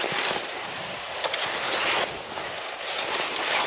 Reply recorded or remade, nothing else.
recorded